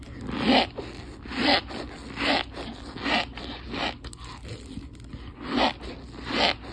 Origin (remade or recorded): recorded